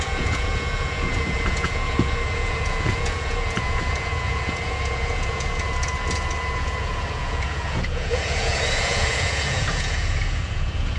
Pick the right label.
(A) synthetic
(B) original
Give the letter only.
A